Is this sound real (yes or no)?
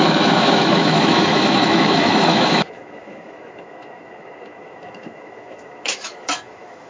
no